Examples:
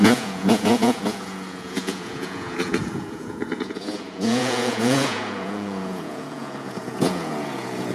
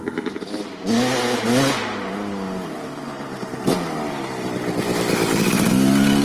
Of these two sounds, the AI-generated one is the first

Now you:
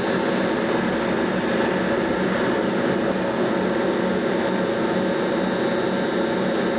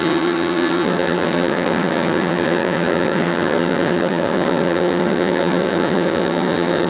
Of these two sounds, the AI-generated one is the second